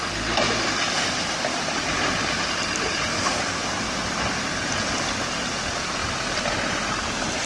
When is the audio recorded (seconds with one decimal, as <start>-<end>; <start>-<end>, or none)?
0.0-7.5